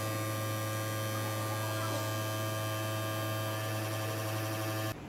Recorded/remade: recorded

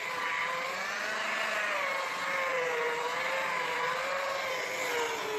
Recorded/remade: recorded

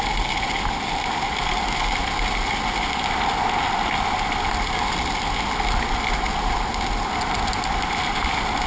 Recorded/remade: recorded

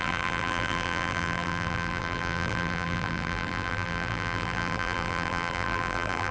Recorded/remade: remade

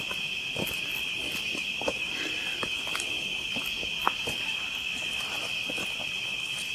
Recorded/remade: recorded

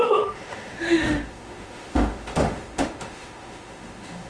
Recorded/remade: remade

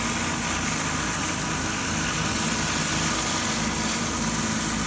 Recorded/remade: recorded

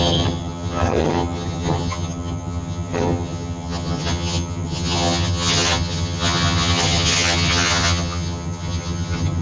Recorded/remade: remade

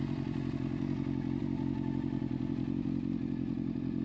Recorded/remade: recorded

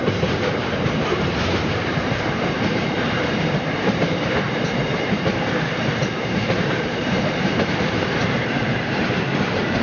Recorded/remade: remade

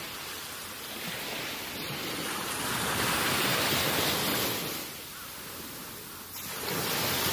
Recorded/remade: recorded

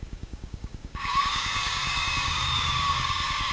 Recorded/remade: remade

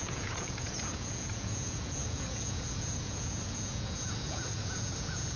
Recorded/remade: remade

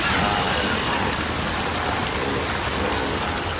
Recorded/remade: recorded